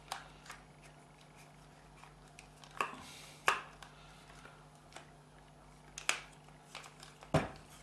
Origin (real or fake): real